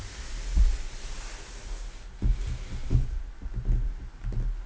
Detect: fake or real real